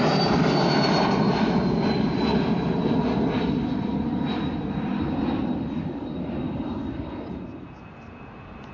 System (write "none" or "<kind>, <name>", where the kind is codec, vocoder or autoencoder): none